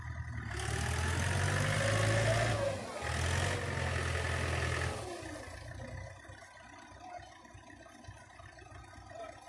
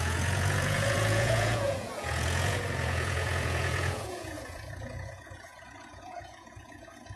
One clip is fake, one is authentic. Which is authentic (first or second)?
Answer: first